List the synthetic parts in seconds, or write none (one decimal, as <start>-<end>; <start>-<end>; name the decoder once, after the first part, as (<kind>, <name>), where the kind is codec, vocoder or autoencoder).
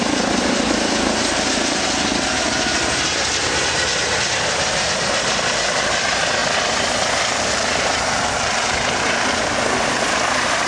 none